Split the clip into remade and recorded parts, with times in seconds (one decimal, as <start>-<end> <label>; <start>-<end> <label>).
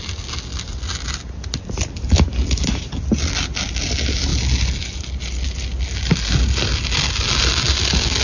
0.0-8.2 recorded